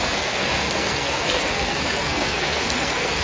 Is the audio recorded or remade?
remade